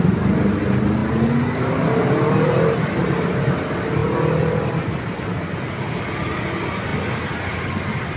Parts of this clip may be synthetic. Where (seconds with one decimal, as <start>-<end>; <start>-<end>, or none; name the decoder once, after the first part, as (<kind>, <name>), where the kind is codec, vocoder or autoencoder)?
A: none